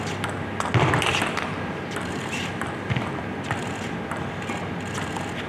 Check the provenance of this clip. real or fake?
real